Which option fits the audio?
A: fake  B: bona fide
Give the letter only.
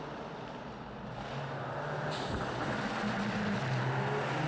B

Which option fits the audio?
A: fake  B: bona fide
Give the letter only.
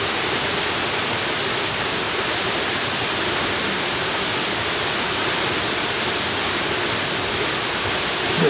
B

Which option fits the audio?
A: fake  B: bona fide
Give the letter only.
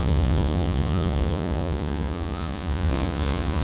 A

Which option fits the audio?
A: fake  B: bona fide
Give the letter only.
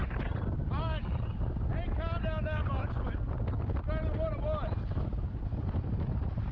B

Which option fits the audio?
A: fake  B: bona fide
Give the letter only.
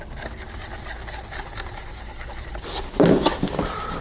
B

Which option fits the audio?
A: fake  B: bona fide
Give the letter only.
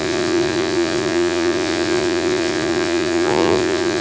A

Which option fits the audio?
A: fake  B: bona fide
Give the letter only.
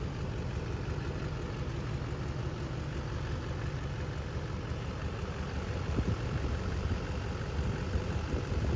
B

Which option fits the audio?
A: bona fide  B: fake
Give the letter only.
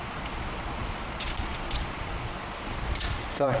B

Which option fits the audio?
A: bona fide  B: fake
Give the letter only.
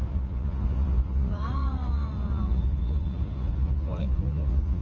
B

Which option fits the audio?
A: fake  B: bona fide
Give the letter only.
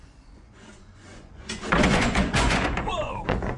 A